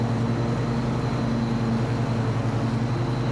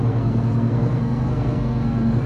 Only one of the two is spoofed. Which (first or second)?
second